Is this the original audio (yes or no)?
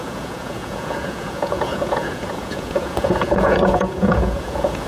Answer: no